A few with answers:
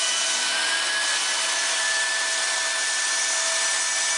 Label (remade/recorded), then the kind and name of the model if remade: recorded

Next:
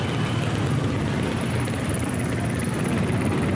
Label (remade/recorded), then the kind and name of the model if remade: recorded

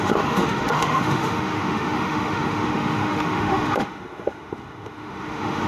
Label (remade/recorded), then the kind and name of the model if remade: remade, autoencoder, DAC-VAE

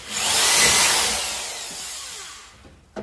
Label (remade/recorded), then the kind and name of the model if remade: recorded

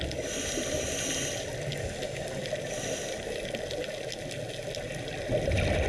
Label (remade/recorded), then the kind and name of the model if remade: recorded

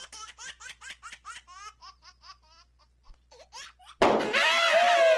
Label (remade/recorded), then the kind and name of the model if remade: recorded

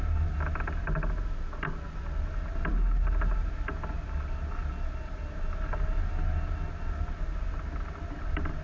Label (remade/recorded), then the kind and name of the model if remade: recorded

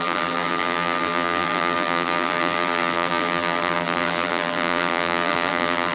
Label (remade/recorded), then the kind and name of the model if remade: remade, vocoder, BigVGAN v2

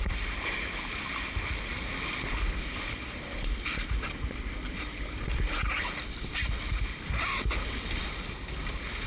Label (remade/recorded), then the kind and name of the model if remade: recorded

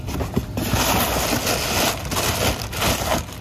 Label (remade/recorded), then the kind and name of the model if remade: recorded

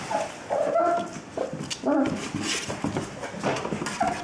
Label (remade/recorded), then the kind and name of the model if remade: recorded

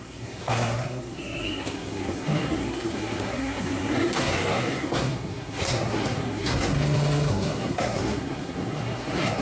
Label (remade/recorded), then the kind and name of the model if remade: remade, codec, SNAC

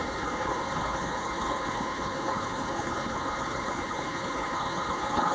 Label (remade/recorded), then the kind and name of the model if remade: remade, codec, HILCodec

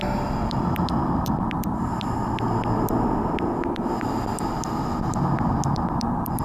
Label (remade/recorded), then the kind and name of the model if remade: recorded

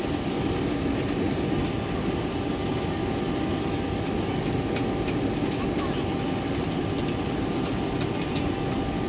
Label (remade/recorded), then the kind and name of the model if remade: recorded